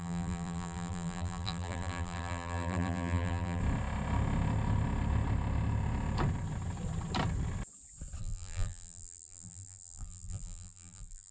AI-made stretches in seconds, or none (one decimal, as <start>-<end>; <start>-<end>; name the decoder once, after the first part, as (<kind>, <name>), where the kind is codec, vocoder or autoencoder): 0.0-3.6 (vocoder, BigVGAN v2); 8.2-11.3